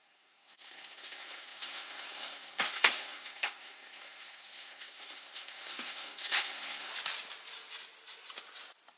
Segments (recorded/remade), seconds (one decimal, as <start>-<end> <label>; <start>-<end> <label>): 0.0-6.9 remade; 6.9-9.0 recorded